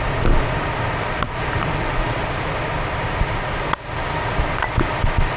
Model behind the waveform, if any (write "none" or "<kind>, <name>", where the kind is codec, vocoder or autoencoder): none